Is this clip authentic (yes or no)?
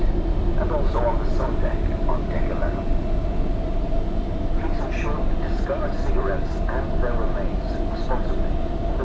yes